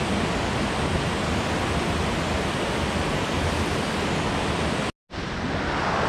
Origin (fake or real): real